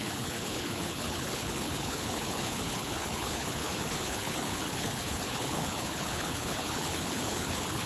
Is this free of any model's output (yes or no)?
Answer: no